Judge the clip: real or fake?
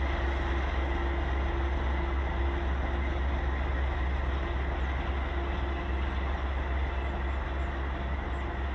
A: real